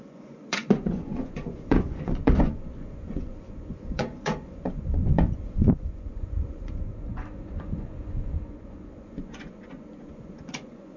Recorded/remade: remade